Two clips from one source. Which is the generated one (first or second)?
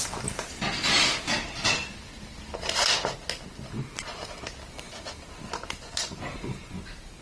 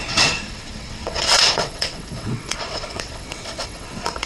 second